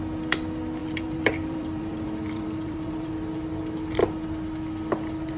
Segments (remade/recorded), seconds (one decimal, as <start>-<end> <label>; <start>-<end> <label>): 0.0-0.8 recorded; 0.8-3.1 remade; 3.1-5.4 recorded